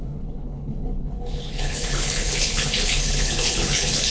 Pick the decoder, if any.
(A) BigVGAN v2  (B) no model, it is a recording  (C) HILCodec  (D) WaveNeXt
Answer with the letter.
C